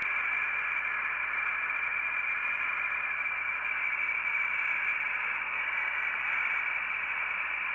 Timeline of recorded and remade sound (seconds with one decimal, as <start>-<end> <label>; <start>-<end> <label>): 0.0-0.5 recorded; 0.5-1.9 remade; 1.9-2.5 recorded; 2.5-7.7 remade